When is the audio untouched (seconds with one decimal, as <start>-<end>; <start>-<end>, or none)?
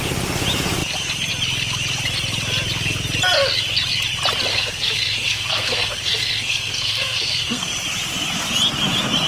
0.0-4.5; 7.7-9.3